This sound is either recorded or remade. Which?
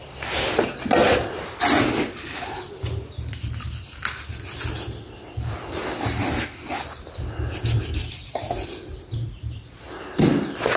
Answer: recorded